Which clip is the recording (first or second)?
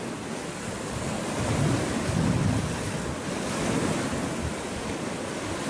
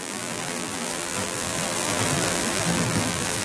first